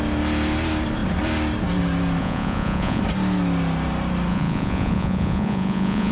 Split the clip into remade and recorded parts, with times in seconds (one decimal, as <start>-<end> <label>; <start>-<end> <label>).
0.0-2.2 recorded; 2.2-3.0 remade; 3.0-4.3 recorded; 4.3-6.1 remade